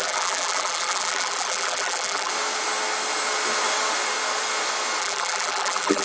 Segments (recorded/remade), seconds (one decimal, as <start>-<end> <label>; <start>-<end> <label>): 0.0-2.3 remade; 2.3-5.0 recorded; 5.0-6.0 remade